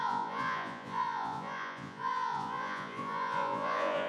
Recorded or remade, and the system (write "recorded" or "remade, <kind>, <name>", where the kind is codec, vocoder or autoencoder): remade, vocoder, Vocos